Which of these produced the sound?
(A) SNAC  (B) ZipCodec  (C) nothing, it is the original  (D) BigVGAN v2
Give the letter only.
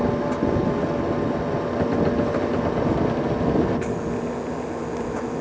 C